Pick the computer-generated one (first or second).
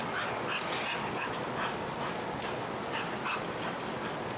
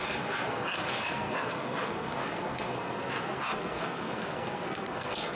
second